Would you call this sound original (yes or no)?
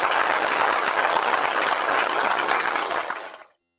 no